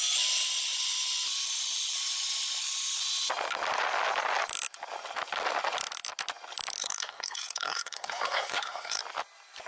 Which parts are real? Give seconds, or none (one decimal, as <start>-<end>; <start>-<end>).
0.0-6.8; 9.0-9.7

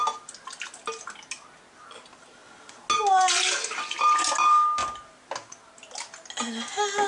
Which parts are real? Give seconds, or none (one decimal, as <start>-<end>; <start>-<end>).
0.0-7.1

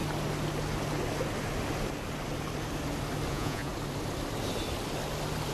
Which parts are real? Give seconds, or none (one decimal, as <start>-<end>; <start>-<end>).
0.0-3.3; 3.7-5.5

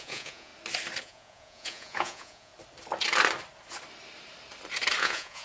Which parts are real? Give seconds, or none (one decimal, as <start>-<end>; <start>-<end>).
0.5-1.0; 2.5-5.0